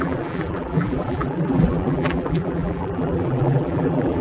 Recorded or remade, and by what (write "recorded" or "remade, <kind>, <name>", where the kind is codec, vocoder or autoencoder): remade, vocoder, BigVGAN v2